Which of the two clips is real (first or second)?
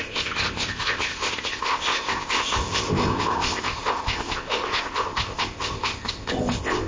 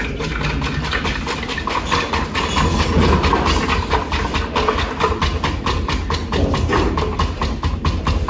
second